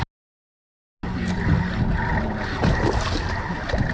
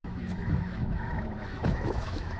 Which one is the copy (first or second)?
second